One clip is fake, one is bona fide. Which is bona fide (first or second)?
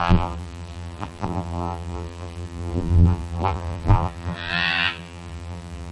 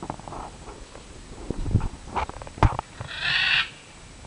second